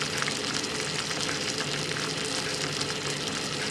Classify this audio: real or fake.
real